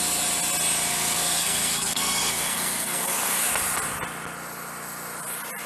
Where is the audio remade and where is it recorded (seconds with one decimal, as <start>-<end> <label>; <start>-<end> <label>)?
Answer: 0.0-0.9 recorded; 0.9-3.5 remade; 3.5-5.7 recorded